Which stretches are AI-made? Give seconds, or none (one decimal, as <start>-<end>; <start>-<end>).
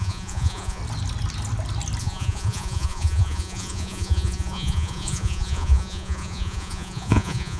0.0-0.8; 2.0-7.6